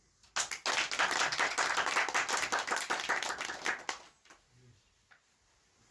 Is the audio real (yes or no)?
yes